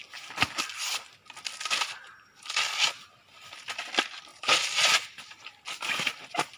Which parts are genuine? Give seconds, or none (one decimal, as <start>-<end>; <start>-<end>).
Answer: 0.0-4.3; 5.5-6.6

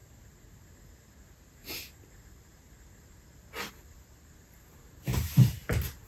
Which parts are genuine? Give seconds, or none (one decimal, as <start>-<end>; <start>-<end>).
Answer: 0.0-3.7

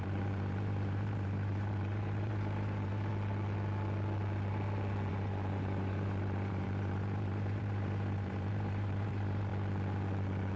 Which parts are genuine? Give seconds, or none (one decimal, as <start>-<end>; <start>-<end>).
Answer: 3.1-5.1; 9.5-10.6

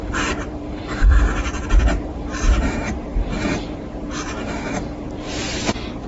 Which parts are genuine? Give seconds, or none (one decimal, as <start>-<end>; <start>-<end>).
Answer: 5.3-6.1

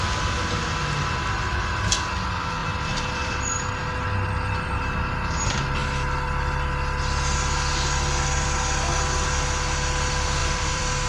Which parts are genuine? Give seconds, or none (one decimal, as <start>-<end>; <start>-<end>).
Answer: 0.0-2.6; 3.4-10.4